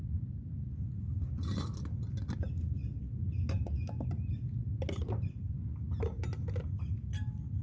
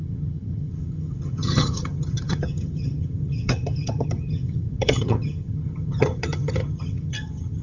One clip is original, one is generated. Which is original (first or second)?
first